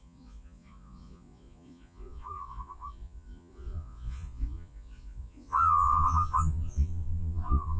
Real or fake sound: fake